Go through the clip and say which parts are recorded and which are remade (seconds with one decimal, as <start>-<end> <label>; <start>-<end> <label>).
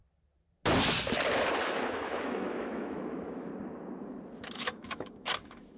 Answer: 0.0-1.6 recorded; 1.6-3.5 remade; 3.5-4.4 recorded; 4.4-5.8 remade